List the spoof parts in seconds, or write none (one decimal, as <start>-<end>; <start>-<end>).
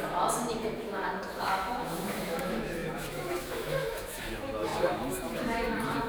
0.0-6.1